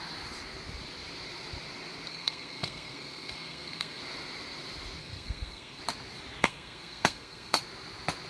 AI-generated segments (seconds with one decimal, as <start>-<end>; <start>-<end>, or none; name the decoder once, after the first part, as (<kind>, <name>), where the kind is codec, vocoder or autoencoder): 2.1-4.0 (codec, SNAC); 5.0-5.8; 6.4-7.6